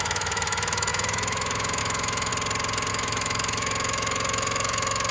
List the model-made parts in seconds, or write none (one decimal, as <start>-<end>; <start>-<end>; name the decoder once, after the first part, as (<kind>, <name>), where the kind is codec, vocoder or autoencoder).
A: 0.0-2.3 (autoencoder, DAC-VAE); 2.9-5.1